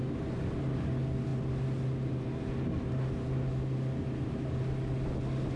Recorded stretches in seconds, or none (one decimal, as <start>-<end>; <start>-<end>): 0.0-5.6